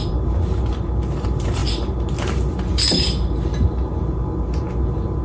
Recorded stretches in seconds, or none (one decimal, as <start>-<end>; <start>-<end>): none